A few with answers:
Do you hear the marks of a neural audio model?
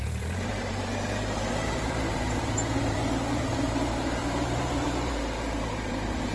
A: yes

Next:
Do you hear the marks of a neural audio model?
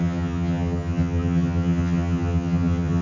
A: yes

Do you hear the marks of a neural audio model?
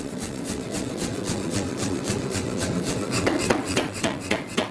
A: yes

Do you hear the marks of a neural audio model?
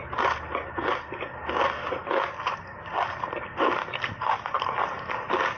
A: no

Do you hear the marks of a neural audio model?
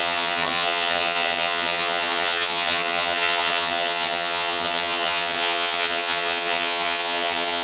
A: yes